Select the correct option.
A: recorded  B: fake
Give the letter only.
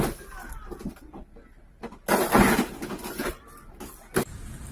A